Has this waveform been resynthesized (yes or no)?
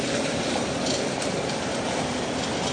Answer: yes